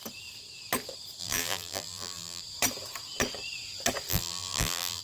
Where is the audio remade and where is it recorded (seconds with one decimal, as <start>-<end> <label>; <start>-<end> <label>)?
0.0-1.2 recorded; 1.2-2.4 remade; 2.4-4.1 recorded; 4.1-5.0 remade